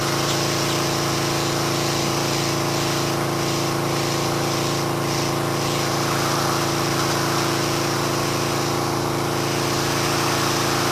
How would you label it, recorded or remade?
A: remade